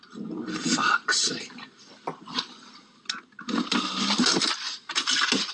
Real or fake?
real